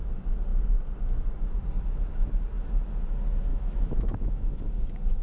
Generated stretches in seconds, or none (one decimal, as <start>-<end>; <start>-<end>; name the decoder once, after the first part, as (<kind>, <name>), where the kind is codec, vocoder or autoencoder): 3.5-4.6 (autoencoder, DAC-VAE)

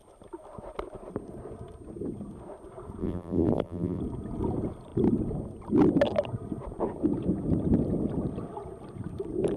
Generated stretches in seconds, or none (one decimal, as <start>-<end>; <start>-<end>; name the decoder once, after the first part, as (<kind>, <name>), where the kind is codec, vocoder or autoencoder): 3.0-4.0 (vocoder, BigVGAN v2)

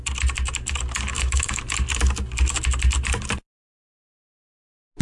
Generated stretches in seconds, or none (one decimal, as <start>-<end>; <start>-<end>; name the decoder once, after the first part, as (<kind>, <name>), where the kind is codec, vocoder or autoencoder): 1.1-1.6 (autoencoder, DAC-VAE)

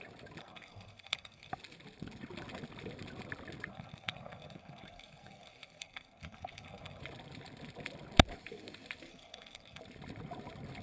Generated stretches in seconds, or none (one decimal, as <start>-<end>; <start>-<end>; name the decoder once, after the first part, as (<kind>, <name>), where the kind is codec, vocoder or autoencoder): 0.4-1.5 (codec, SNAC); 3.7-7.0; 9.1-9.8